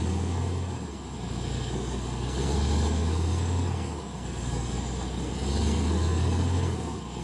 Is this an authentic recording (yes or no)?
no